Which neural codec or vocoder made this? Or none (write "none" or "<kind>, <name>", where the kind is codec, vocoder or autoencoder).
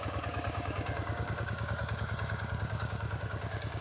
codec, DAC